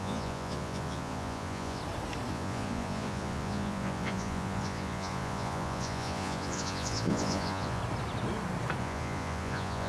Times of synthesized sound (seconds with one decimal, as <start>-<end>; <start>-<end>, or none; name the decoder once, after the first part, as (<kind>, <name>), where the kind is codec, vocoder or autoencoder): 0.0-1.8 (vocoder, Vocos); 2.3-7.8; 8.8-9.9